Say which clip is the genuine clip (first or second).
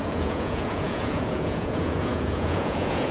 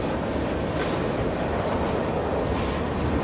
second